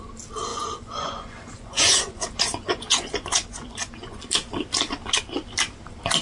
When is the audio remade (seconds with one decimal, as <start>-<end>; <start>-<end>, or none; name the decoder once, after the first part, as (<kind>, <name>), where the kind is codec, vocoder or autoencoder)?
0.5-4.2 (vocoder, Vocos)